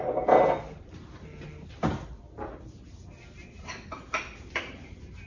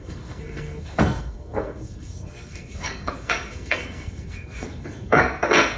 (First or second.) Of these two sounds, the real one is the first